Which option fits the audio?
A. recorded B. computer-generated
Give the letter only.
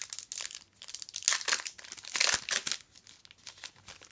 A